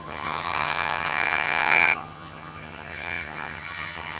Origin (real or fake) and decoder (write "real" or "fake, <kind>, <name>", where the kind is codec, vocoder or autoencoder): fake, vocoder, HiFi-GAN